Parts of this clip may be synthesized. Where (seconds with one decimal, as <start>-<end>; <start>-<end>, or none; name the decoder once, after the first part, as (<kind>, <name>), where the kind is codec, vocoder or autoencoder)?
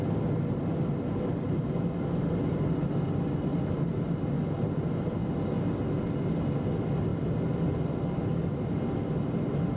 none